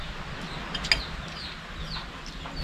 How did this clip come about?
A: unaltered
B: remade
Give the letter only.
A